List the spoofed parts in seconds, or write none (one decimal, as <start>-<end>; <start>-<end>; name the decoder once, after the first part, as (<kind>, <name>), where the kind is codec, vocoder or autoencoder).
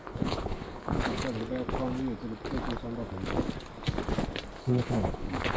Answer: 0.0-1.2 (codec, HILCodec); 4.6-5.6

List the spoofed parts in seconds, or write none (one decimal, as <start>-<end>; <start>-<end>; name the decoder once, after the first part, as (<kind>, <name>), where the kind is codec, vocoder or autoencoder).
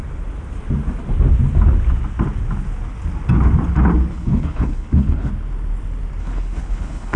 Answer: 4.1-5.3 (codec, HILCodec); 6.2-7.2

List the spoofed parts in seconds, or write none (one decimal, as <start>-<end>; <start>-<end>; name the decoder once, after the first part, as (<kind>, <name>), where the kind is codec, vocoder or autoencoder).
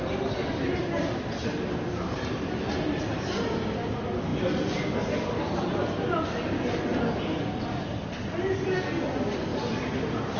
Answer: none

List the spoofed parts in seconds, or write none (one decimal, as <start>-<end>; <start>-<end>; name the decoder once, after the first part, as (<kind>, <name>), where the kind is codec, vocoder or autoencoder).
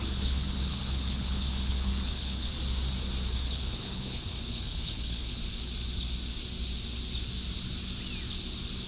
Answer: 0.0-2.5 (codec, HILCodec); 3.3-5.4